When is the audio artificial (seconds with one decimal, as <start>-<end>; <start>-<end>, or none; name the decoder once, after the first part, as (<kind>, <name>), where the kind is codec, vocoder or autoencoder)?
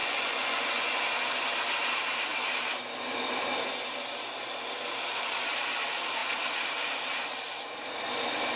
0.0-1.0 (vocoder, Vocos)